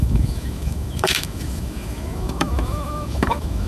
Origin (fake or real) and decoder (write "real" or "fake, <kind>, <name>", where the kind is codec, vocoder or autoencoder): fake, autoencoder, DAC-VAE